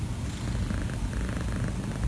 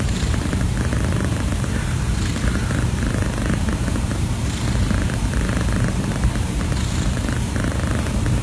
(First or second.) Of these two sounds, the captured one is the first